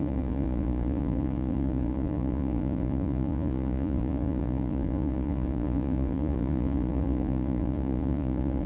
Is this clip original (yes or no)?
no